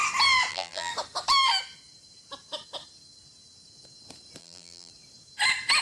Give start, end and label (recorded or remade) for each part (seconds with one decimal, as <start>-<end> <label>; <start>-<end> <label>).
0.0-0.5 recorded; 0.5-0.9 remade; 0.9-4.4 recorded; 4.4-4.9 remade; 4.9-5.8 recorded